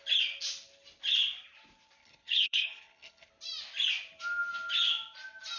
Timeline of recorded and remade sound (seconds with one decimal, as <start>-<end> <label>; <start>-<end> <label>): 0.0-2.0 recorded; 2.0-3.3 remade; 3.3-5.6 recorded